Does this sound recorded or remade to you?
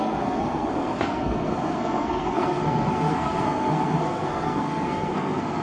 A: remade